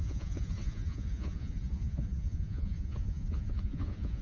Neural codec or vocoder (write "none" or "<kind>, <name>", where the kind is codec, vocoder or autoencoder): vocoder, Vocos